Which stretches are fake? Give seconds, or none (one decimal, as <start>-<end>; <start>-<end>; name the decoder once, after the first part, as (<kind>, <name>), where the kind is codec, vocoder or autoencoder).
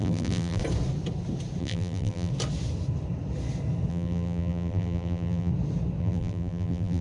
0.0-0.6 (vocoder, BigVGAN v2); 1.6-2.3; 3.9-5.5; 6.0-7.0